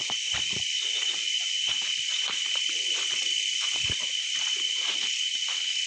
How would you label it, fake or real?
real